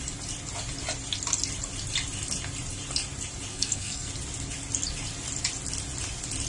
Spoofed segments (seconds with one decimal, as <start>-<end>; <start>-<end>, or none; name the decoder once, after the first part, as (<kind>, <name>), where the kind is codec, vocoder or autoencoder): 3.5-4.1 (codec, SNAC)